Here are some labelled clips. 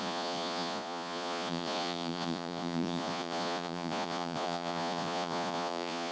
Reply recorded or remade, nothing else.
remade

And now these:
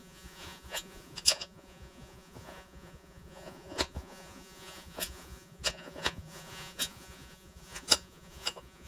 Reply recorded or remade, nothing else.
remade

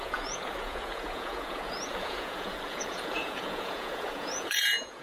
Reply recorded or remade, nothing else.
remade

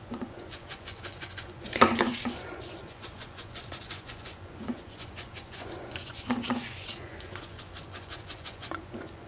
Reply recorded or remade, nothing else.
remade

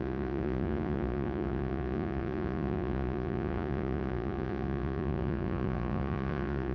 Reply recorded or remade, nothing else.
remade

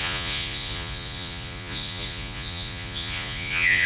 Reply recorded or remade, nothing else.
remade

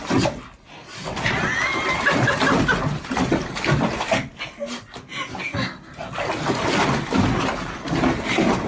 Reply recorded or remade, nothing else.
recorded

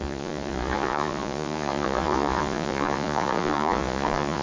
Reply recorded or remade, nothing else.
remade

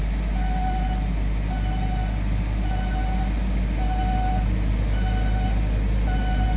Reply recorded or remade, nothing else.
recorded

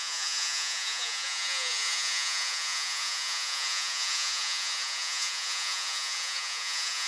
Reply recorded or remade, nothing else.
remade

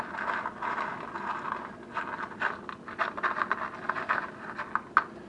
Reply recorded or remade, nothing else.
recorded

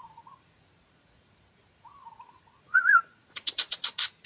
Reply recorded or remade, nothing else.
remade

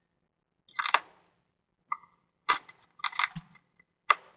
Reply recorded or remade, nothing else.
recorded